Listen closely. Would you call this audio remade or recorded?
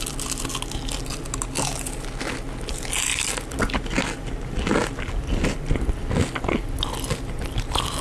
recorded